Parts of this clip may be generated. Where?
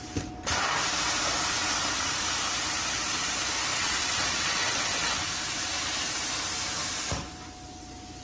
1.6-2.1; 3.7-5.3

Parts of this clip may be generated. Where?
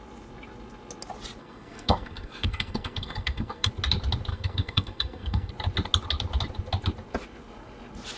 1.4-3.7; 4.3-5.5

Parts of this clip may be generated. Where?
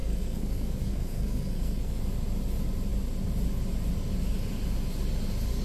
0.0-2.0